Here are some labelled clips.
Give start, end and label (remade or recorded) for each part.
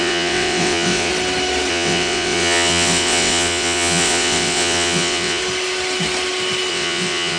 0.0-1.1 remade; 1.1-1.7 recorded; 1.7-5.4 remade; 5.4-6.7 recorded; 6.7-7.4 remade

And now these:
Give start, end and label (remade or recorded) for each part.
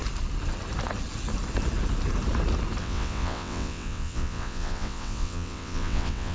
0.0-2.8 recorded; 2.8-6.3 remade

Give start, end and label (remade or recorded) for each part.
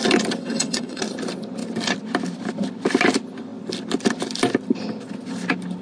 0.0-0.4 recorded; 0.4-1.0 remade; 1.0-5.8 recorded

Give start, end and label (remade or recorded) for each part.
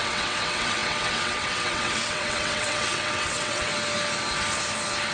0.0-3.7 remade; 3.7-5.1 recorded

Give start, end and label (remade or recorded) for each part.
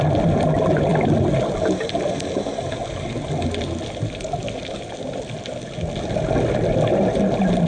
0.0-7.7 recorded